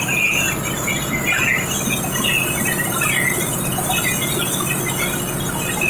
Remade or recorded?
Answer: recorded